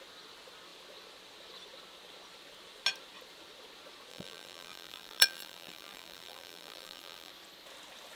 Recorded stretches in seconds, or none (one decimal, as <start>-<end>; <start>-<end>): 0.0-4.1; 7.3-8.2